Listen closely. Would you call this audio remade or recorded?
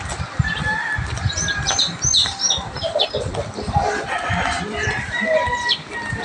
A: remade